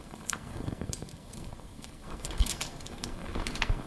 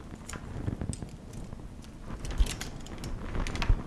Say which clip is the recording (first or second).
second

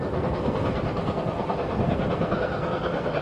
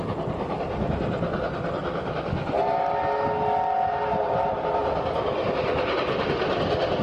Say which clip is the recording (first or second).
second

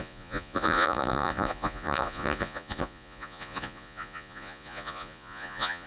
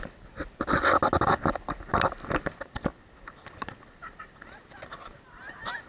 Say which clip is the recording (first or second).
second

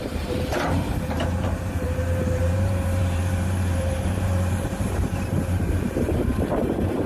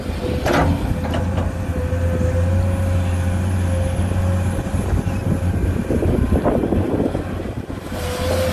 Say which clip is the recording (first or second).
second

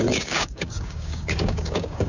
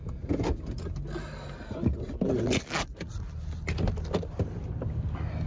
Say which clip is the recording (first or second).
second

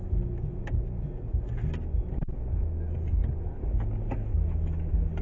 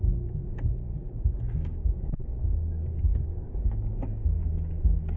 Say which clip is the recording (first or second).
first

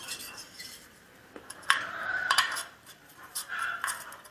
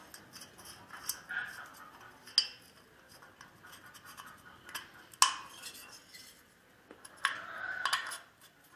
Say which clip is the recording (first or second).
second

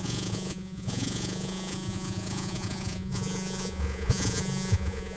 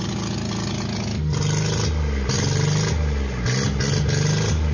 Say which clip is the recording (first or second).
second